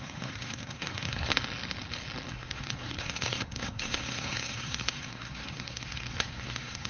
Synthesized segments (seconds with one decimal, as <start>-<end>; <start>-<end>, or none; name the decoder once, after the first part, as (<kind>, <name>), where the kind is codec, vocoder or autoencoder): 0.0-1.3 (codec, SNAC); 2.3-6.9